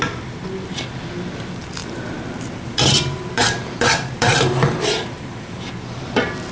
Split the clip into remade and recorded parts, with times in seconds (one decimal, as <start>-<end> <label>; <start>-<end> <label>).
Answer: 0.0-1.8 recorded; 1.8-5.7 remade; 5.7-6.5 recorded

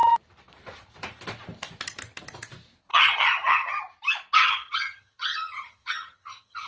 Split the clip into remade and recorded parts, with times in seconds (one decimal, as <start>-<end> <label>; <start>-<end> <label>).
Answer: 0.0-2.9 recorded; 2.9-3.8 remade; 3.8-4.4 recorded; 4.4-6.7 remade

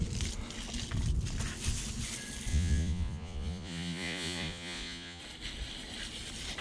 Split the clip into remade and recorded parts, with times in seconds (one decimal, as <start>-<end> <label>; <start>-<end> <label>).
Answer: 0.0-2.5 recorded; 2.5-5.2 remade; 5.2-6.6 recorded

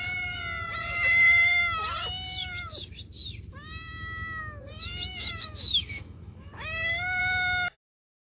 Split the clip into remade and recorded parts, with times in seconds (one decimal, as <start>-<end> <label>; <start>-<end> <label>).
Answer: 0.0-5.1 recorded; 5.1-7.2 remade; 7.2-8.3 recorded

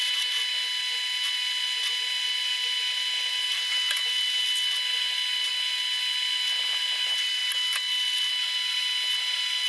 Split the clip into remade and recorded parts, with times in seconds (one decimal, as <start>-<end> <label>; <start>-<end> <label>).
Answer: 0.0-9.7 recorded

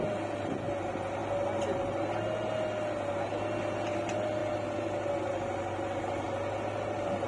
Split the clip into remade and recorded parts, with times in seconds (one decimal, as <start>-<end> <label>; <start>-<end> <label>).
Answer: 0.0-7.3 recorded

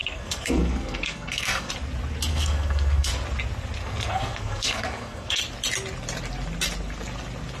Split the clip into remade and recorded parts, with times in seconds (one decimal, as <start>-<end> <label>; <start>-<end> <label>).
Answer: 0.0-1.7 remade; 1.7-2.3 recorded; 2.3-3.1 remade; 3.1-3.8 recorded; 3.8-5.4 remade; 5.4-7.6 recorded

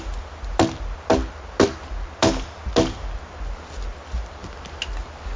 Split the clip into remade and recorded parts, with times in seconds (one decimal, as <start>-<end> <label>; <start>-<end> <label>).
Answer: 0.0-5.4 recorded